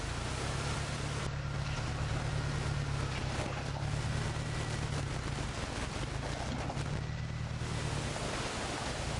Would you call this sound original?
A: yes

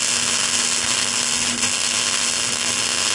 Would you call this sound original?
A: yes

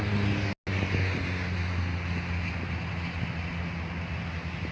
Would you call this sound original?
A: yes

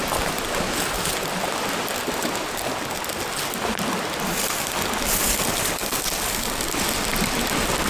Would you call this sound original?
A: yes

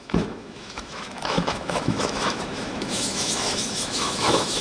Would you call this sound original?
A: no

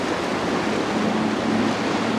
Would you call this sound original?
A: yes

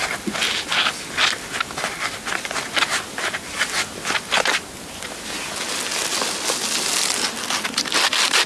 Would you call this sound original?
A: yes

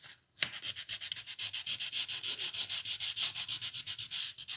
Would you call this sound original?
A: yes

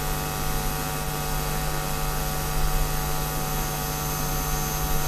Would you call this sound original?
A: yes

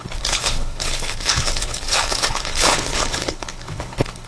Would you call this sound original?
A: no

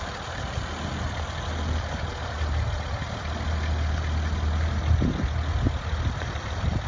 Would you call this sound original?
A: yes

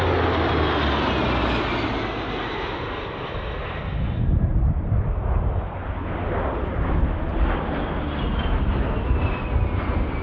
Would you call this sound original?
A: yes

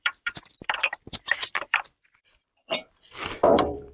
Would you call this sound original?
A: no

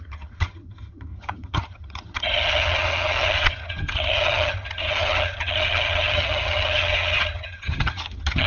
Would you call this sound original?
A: no